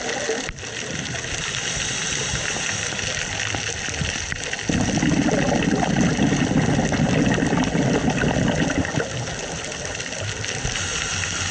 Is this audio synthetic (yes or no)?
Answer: no